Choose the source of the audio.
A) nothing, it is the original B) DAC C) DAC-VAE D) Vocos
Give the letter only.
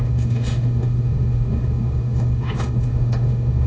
C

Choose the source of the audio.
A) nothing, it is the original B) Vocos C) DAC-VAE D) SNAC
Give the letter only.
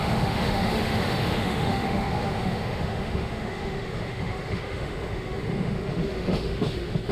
C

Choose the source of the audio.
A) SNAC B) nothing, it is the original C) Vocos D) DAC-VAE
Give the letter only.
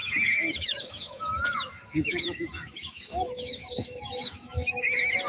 D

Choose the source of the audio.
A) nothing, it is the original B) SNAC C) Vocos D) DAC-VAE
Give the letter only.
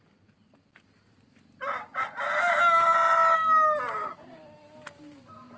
A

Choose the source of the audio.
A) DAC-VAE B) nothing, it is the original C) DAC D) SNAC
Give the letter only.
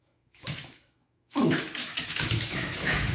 A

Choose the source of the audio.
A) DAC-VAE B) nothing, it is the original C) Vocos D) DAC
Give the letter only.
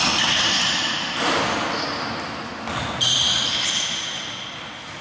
B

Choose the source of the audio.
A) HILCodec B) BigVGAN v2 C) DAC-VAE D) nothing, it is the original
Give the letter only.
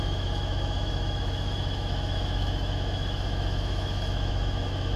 C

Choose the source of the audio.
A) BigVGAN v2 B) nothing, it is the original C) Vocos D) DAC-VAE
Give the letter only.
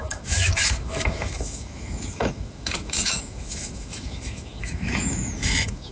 D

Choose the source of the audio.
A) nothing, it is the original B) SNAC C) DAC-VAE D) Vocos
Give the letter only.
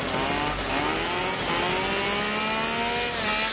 A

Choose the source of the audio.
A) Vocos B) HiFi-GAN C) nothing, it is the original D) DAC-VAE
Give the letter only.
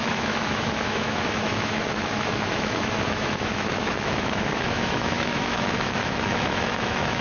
D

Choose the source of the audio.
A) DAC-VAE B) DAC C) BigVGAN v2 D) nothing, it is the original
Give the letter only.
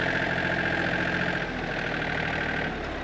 D